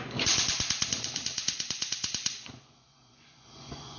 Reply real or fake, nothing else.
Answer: fake